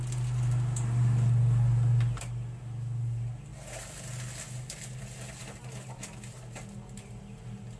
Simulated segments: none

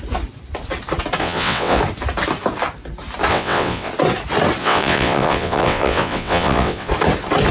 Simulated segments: 1.2-1.8 (vocoder, WaveNeXt); 3.3-3.9; 4.6-6.9

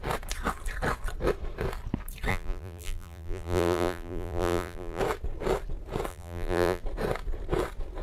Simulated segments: 2.3-5.0 (vocoder, BigVGAN v2); 6.1-6.8

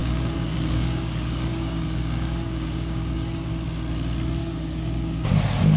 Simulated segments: 0.0-3.5 (codec, DAC); 4.4-5.3

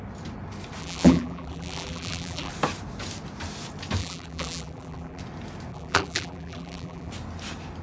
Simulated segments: 0.8-2.5 (vocoder, BigVGAN v2); 4.0-5.2; 5.7-7.1